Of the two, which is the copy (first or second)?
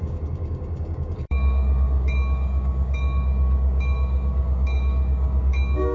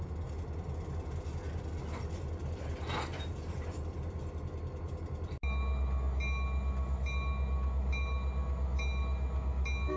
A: first